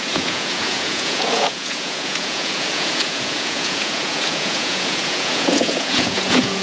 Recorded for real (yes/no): no